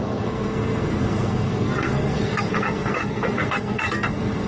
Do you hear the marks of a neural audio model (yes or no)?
yes